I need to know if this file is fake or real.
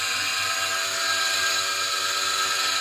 real